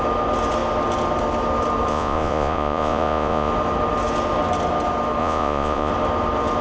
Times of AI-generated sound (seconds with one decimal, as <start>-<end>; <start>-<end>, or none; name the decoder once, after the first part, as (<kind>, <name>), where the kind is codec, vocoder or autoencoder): 1.9-3.5 (vocoder, Vocos); 5.2-5.9